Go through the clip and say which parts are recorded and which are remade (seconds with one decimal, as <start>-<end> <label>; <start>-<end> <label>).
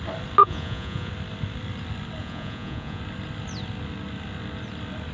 0.0-0.4 recorded; 0.4-1.1 remade; 1.1-2.2 recorded; 2.2-3.0 remade; 3.0-5.1 recorded